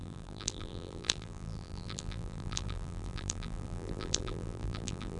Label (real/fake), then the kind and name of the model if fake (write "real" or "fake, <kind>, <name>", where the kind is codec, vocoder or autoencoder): fake, vocoder, BigVGAN v2